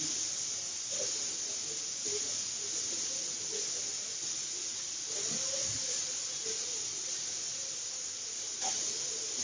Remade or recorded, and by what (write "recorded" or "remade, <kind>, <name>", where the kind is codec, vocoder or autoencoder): recorded